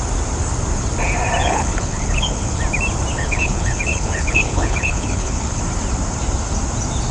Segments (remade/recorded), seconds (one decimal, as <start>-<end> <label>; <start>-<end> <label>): 0.0-1.4 recorded; 1.4-2.6 remade; 2.6-3.1 recorded; 3.1-5.6 remade; 5.6-7.1 recorded